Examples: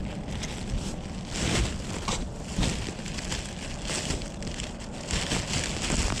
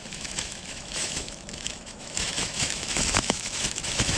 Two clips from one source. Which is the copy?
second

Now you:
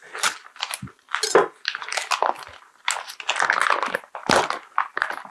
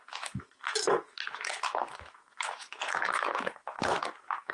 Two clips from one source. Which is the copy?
second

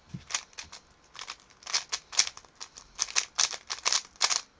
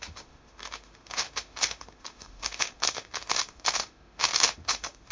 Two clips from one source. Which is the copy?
second